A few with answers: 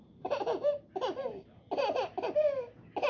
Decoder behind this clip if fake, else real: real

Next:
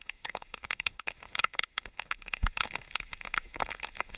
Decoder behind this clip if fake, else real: fake, autoencoder, DAC-VAE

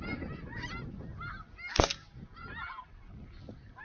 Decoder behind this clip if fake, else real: real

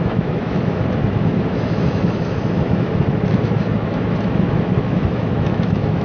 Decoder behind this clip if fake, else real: fake, autoencoder, DAC-VAE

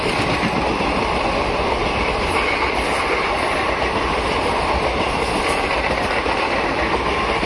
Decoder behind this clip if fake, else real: real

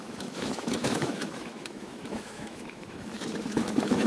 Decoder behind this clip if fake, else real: fake, autoencoder, DAC-VAE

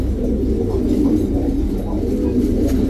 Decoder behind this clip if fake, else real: real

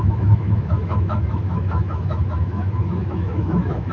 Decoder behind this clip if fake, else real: fake, autoencoder, DAC-VAE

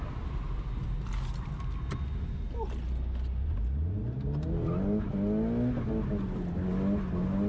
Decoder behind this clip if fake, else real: real